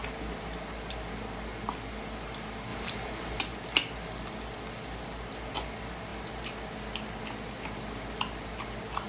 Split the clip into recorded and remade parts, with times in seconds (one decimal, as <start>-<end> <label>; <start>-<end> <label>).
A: 0.0-2.7 recorded; 2.7-3.4 remade; 3.4-9.1 recorded

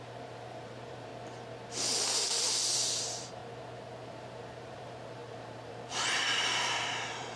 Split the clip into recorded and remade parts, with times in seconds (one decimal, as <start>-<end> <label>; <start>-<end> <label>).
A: 0.0-1.1 remade; 1.1-3.0 recorded; 3.0-3.4 remade; 3.4-4.0 recorded; 4.0-7.4 remade

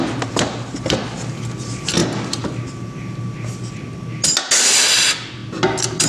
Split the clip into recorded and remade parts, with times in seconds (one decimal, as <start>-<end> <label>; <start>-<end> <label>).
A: 0.0-6.1 recorded

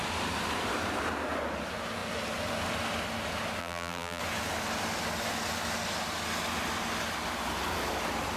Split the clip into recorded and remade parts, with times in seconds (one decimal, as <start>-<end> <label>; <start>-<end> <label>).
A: 0.0-3.6 recorded; 3.6-4.2 remade; 4.2-8.4 recorded

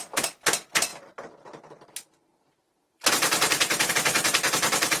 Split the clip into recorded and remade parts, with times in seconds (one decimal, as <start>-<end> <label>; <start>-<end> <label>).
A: 0.0-0.9 recorded; 0.9-3.9 remade; 3.9-5.0 recorded

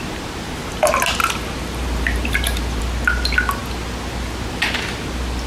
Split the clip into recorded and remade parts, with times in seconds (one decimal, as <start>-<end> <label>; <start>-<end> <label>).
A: 0.0-1.2 recorded; 1.2-2.8 remade; 2.8-5.5 recorded

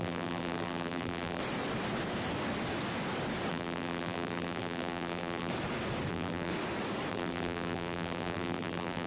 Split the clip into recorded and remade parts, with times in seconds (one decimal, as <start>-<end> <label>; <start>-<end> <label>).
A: 0.0-1.4 remade; 1.4-3.5 recorded; 3.5-5.5 remade; 5.5-6.1 recorded; 6.1-6.5 remade; 6.5-7.1 recorded; 7.1-9.1 remade

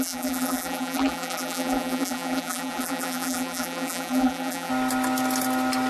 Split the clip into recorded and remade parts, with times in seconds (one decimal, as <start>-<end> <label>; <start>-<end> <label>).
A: 0.0-4.7 remade; 4.7-5.9 recorded